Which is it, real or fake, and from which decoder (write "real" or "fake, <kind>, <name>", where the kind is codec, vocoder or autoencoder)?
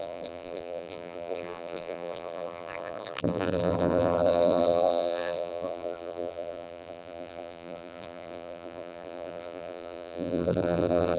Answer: fake, vocoder, BigVGAN v2